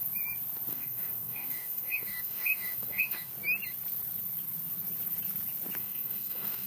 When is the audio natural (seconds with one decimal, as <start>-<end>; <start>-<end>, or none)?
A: 0.0-0.7; 3.3-5.8